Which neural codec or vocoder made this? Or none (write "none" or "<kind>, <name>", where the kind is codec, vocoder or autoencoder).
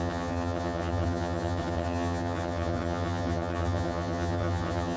vocoder, HiFi-GAN